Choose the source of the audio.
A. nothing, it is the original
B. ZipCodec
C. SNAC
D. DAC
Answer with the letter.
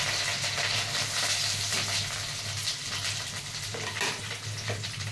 A